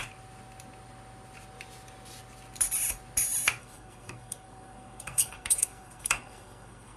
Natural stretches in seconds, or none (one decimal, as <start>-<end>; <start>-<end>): 0.0-3.6